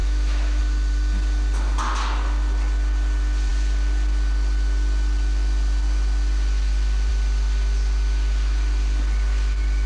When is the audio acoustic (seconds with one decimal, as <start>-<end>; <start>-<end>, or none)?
0.6-9.9